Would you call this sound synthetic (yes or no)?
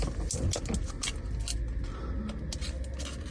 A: no